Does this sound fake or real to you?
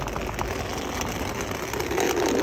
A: real